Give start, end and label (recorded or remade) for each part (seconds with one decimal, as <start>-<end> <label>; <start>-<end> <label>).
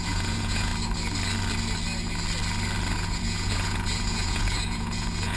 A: 0.0-0.7 remade; 0.7-2.9 recorded; 2.9-5.4 remade